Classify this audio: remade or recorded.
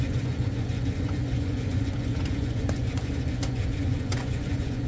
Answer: remade